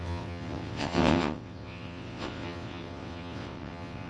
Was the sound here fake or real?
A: fake